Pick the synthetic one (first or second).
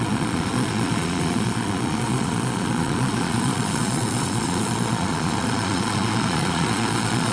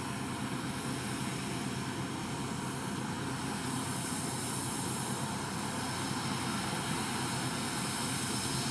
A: first